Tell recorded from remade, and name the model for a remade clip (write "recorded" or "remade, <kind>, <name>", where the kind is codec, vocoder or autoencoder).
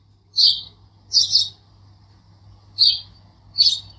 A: recorded